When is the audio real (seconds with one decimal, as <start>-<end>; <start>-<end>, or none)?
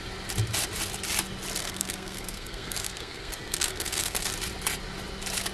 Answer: 0.0-1.6; 4.3-5.5